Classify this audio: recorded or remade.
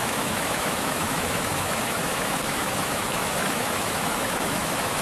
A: remade